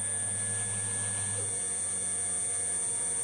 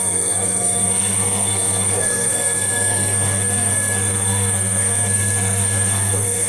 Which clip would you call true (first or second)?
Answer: first